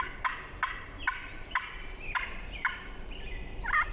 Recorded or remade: remade